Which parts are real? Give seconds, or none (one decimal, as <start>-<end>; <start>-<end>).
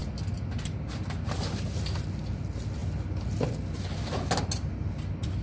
0.0-5.4